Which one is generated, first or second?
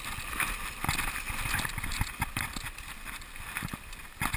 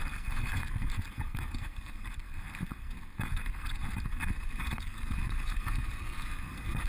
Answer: second